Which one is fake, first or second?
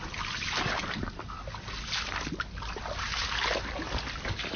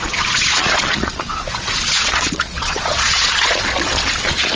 second